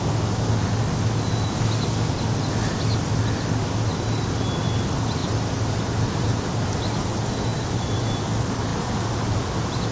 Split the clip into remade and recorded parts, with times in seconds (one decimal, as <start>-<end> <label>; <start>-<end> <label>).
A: 0.0-5.2 recorded; 5.2-6.8 remade; 6.8-7.5 recorded; 7.5-8.2 remade; 8.2-9.9 recorded